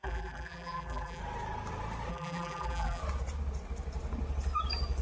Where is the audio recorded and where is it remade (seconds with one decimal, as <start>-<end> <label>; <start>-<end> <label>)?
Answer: 0.0-1.2 remade; 1.2-2.1 recorded; 2.1-3.0 remade; 3.0-5.0 recorded